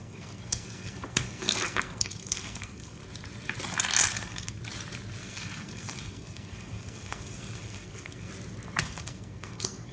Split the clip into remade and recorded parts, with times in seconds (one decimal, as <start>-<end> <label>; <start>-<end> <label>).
0.0-3.0 remade; 3.0-4.1 recorded; 4.1-4.6 remade; 4.6-5.2 recorded; 5.2-8.3 remade; 8.3-8.8 recorded; 8.8-9.9 remade